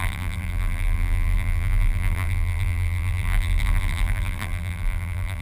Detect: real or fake fake